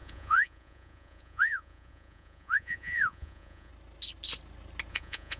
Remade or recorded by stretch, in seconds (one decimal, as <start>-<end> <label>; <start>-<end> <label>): 0.0-3.7 remade; 3.7-4.9 recorded; 4.9-5.4 remade